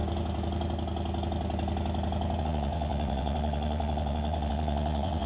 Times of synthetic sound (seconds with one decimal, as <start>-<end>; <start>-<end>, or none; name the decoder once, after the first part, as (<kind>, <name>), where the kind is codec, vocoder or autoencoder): 2.4-5.3 (vocoder, WaveNeXt)

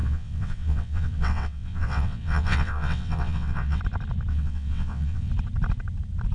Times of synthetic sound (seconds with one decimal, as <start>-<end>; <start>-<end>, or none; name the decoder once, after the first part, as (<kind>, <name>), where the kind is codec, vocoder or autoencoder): 0.0-3.8 (vocoder, WaveNeXt); 4.3-5.3

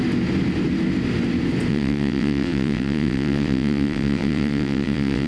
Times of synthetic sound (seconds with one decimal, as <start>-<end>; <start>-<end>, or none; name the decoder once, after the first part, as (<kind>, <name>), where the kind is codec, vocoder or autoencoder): 1.7-5.3 (vocoder, WaveNeXt)

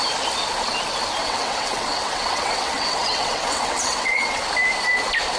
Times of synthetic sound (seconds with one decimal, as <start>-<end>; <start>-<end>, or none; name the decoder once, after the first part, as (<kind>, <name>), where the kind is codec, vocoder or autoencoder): 1.2-4.4 (vocoder, WaveNeXt)

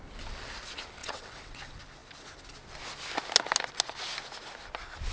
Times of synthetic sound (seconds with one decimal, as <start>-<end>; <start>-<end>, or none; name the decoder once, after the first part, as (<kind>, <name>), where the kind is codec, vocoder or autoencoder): 1.0-1.6 (vocoder, WaveNeXt)

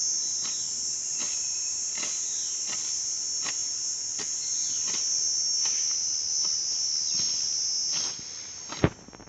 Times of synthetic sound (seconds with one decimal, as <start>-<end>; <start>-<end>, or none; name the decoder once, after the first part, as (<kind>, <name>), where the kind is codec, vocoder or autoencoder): none

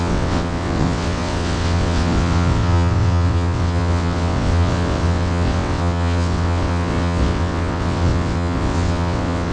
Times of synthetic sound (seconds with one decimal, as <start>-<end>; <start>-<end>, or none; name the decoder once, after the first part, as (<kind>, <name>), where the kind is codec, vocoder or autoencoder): 0.0-9.5 (vocoder, WaveNeXt)

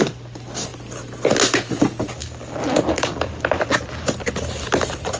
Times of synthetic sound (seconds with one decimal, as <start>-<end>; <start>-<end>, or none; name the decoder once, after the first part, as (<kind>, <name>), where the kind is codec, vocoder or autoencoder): none